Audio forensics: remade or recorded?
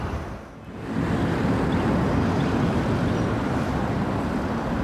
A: recorded